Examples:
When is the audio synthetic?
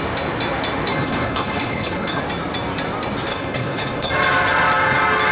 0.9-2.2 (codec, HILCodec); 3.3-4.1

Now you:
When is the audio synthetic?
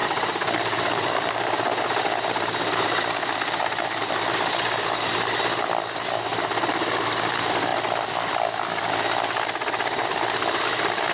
none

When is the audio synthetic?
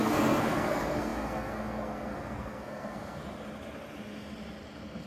0.0-3.2 (codec, SNAC)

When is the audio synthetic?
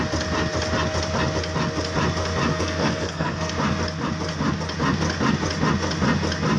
2.5-3.5 (codec, SNAC)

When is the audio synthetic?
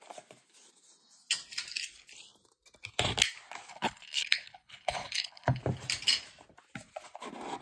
3.7-5.6 (codec, HILCodec)